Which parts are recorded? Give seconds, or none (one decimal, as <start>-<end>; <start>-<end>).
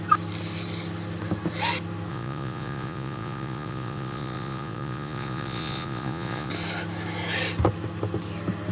0.0-2.1; 6.5-8.7